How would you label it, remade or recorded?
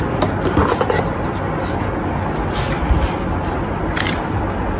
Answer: recorded